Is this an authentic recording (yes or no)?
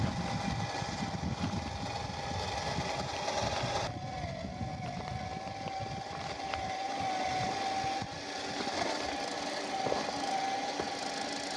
yes